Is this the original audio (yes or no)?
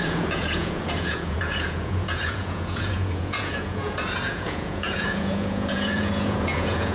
no